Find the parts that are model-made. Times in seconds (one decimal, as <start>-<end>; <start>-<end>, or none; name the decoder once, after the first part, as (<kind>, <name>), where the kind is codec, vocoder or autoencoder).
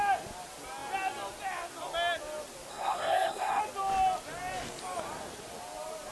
2.7-3.6 (codec, SNAC)